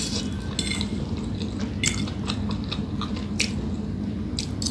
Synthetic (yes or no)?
no